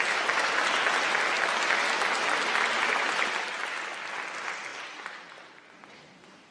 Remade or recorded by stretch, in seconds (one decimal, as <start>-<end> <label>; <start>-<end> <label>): 0.0-4.7 recorded; 4.7-6.5 remade